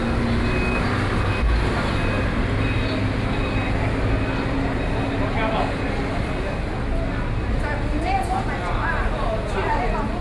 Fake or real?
real